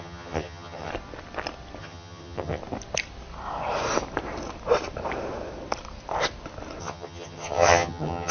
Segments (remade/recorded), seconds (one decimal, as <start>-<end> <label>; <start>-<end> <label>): 0.0-0.9 remade; 0.9-1.8 recorded; 1.8-2.6 remade; 2.6-6.8 recorded; 6.8-8.3 remade